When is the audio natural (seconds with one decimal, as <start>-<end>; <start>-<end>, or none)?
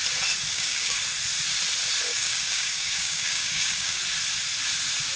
0.0-0.5; 1.0-2.1; 4.0-5.2